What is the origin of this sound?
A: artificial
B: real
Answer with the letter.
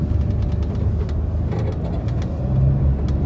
B